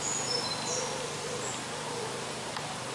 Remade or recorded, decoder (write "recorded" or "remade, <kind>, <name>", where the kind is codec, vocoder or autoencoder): recorded